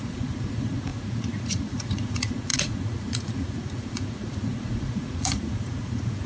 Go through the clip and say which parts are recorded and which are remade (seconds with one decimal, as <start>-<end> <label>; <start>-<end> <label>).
0.0-6.3 remade